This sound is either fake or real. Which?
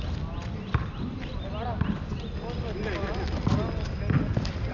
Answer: real